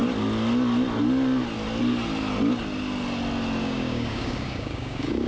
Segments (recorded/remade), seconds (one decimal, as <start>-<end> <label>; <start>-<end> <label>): 0.0-3.6 recorded; 3.6-5.3 remade